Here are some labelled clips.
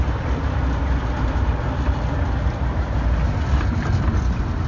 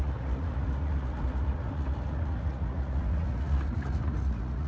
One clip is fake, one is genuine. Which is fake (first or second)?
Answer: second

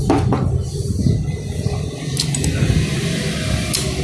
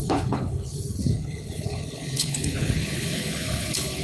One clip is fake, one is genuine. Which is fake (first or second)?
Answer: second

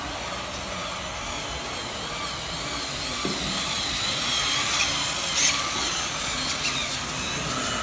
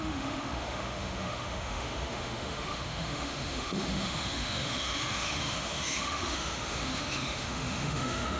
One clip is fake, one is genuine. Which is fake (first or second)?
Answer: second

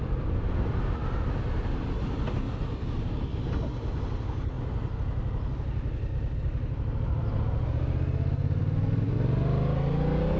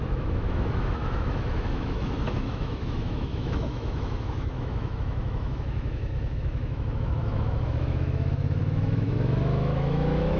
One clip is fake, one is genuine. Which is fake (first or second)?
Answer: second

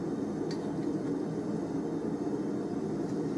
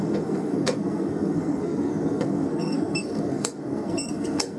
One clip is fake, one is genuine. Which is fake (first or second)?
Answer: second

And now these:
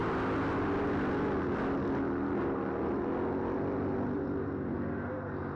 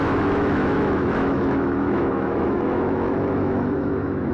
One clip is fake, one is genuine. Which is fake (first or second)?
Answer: second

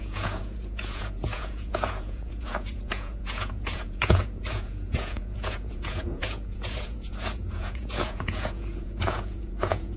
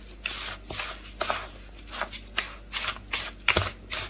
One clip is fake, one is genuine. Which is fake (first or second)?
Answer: first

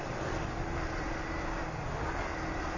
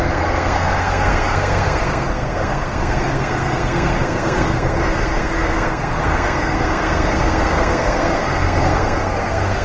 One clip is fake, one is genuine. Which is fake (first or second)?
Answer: second